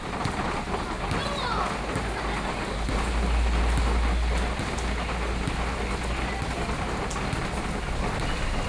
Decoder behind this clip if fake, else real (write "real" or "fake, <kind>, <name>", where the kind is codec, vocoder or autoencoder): real